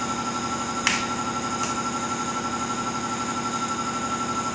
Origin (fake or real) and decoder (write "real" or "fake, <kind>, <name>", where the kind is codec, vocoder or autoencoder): real